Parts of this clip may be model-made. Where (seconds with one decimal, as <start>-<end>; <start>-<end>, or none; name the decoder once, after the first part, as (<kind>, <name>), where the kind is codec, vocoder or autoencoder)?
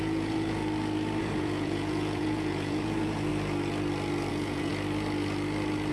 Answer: 0.0-0.6 (vocoder, Vocos); 1.2-3.3; 4.3-4.7